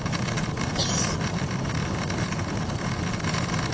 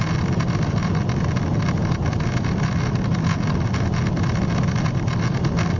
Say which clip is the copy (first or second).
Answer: first